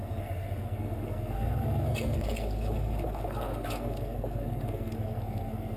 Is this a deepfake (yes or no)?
yes